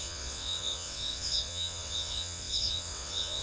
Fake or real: fake